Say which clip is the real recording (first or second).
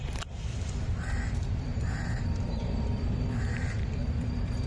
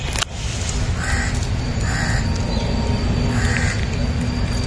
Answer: second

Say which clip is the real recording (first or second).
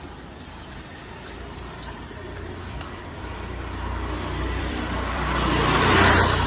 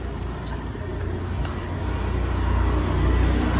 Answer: second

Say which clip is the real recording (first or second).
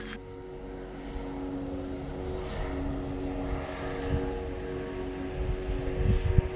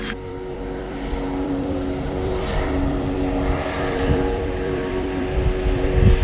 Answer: first